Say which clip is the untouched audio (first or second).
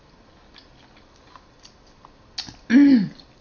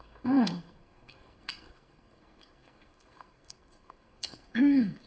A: first